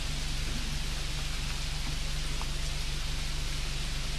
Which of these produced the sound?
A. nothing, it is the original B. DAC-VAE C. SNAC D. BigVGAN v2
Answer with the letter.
A